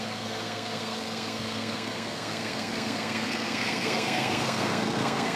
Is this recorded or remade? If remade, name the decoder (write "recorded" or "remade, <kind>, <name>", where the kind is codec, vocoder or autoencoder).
remade, codec, SNAC